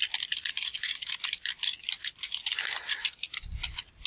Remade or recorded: recorded